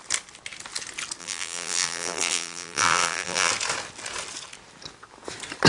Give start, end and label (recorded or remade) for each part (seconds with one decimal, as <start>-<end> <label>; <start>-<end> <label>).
0.0-1.2 recorded; 1.2-3.5 remade; 3.5-5.7 recorded